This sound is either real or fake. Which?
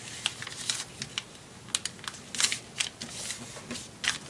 real